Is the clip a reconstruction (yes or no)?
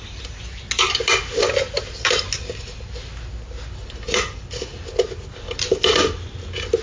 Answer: no